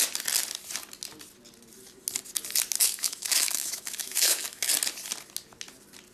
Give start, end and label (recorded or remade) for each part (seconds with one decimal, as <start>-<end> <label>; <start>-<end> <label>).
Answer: 0.0-2.8 recorded; 2.8-4.7 remade; 4.7-6.1 recorded

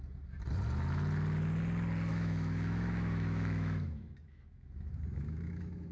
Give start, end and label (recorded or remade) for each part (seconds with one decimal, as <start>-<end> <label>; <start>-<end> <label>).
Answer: 0.0-2.1 recorded; 2.1-5.9 remade

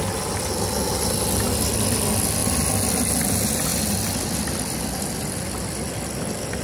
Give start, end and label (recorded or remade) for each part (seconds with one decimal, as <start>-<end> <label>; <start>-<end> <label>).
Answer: 0.0-6.6 recorded

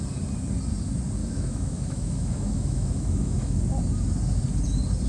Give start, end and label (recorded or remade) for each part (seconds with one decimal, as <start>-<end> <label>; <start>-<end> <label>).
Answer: 0.0-1.2 recorded; 1.2-3.6 remade; 3.6-5.1 recorded

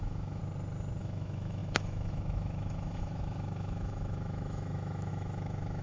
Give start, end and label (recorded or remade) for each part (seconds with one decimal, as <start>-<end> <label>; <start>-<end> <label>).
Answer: 0.0-0.4 remade; 0.4-1.0 recorded; 1.0-5.8 remade

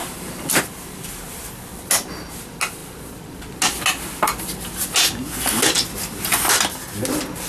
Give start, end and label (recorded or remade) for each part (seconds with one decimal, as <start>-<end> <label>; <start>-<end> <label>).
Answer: 0.0-7.5 recorded

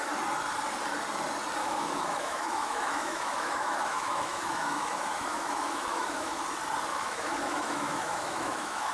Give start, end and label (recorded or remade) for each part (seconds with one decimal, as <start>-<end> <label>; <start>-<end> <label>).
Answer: 0.0-1.6 recorded; 1.6-6.4 remade; 6.4-6.9 recorded; 6.9-8.9 remade

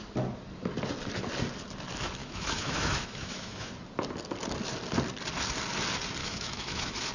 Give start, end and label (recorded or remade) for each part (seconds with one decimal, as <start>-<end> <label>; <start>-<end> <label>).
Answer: 0.0-2.2 recorded; 2.2-3.7 remade; 3.7-6.2 recorded; 6.2-7.1 remade